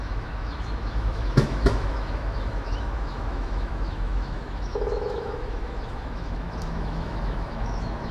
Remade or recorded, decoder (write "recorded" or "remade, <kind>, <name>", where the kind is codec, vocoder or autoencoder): remade, autoencoder, DAC-VAE